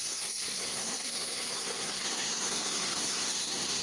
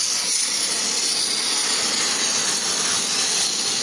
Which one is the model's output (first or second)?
first